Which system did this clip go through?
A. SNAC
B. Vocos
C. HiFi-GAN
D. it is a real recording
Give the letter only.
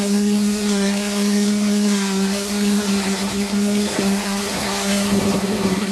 A